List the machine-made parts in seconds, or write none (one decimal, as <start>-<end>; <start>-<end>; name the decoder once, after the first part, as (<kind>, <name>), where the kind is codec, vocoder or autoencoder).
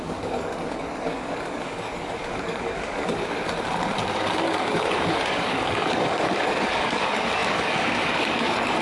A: 0.0-3.4 (codec, DAC); 4.1-8.8